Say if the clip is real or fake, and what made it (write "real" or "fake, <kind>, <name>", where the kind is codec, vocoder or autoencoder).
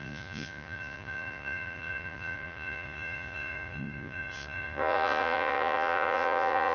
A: fake, vocoder, Vocos